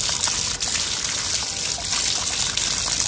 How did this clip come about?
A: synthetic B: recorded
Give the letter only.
B